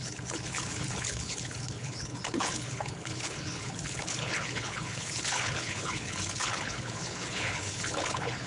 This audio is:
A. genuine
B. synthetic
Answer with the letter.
B